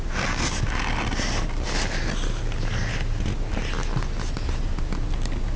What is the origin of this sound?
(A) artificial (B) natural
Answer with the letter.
B